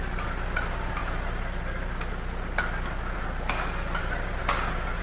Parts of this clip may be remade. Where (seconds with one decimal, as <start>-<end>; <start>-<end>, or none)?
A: none